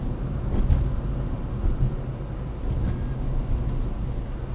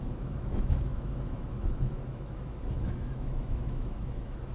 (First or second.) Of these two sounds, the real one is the first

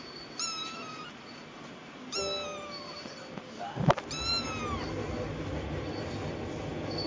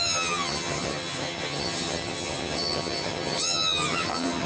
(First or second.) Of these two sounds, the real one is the first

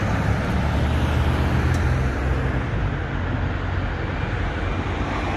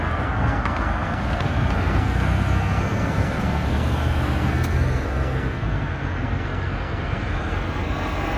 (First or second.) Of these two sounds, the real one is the first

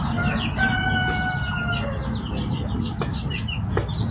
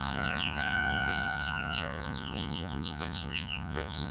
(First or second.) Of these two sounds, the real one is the first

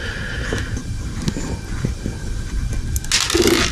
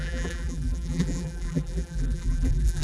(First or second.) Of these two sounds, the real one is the first